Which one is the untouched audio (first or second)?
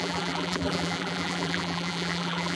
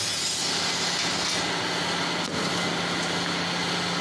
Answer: second